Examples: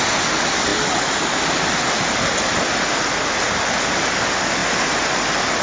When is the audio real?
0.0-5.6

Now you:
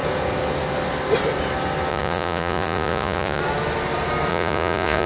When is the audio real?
0.0-1.9; 3.4-4.3

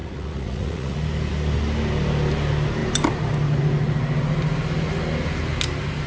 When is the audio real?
1.0-6.1

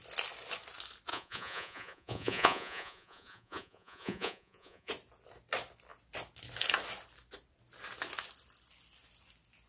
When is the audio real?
0.0-1.1; 4.9-9.7